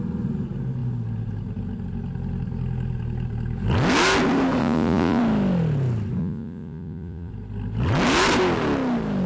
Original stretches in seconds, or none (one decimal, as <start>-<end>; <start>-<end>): 0.0-4.6; 5.2-6.2; 7.3-9.3